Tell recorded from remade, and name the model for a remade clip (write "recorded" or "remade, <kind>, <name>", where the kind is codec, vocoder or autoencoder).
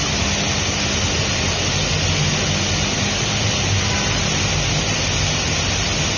recorded